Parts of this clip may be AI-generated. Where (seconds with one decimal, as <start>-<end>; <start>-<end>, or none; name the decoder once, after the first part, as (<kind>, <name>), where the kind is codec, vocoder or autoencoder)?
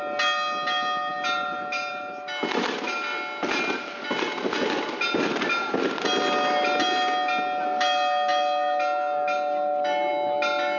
none